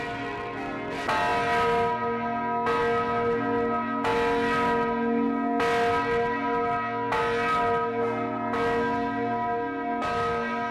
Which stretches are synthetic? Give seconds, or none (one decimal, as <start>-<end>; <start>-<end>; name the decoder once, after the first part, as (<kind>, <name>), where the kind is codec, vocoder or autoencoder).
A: none

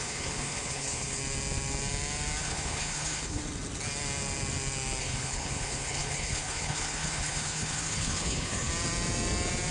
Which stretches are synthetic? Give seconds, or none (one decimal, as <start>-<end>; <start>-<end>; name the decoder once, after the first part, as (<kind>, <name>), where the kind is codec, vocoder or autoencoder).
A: 0.0-1.2 (codec, HILCodec); 2.4-3.4; 5.0-8.7

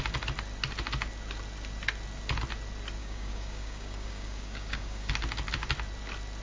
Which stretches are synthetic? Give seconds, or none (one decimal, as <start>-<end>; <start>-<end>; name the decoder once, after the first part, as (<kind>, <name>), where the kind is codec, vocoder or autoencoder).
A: 3.0-5.1 (codec, DAC)

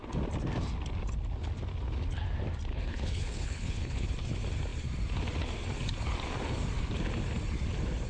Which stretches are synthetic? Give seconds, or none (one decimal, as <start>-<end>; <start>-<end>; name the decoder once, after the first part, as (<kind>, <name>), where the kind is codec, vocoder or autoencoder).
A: 2.7-4.1 (codec, HILCodec)

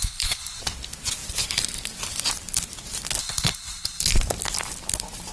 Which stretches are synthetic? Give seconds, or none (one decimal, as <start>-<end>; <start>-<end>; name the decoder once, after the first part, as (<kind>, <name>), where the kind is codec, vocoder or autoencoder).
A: 0.0-0.6 (codec, HILCodec); 3.2-4.0

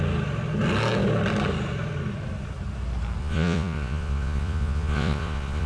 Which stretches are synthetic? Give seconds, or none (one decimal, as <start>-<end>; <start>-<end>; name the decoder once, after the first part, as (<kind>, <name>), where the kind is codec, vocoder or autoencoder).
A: 3.2-5.7 (vocoder, Vocos)

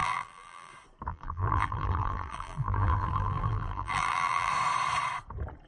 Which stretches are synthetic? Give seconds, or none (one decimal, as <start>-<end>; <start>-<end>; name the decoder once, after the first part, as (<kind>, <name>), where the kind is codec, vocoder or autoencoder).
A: 0.0-0.7 (vocoder, BigVGAN v2); 1.1-4.5

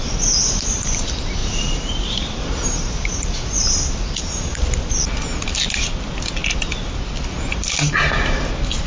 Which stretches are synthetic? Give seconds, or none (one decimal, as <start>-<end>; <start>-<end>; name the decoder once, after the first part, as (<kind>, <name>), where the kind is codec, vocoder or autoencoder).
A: 1.4-4.6 (vocoder, BigVGAN v2)